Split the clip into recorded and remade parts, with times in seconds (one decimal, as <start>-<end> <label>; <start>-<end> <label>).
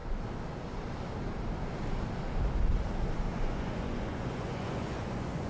0.0-3.3 recorded; 3.3-5.5 remade